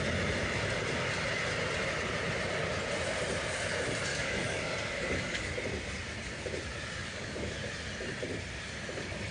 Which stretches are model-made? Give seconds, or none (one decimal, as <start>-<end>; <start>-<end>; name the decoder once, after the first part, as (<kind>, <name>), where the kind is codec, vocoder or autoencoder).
4.1-5.5 (codec, DAC); 7.0-7.6